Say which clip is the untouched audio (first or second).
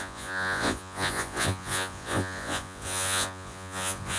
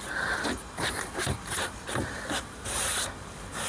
second